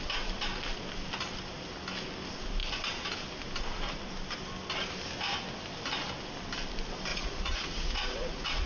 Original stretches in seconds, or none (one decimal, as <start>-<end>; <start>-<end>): 0.0-7.1